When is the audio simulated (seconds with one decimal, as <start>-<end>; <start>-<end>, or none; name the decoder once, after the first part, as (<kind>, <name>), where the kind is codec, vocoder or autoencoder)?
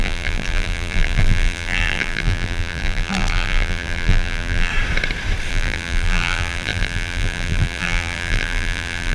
0.0-4.7 (vocoder, BigVGAN v2); 5.5-9.1